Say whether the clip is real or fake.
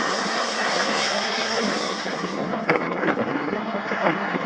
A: fake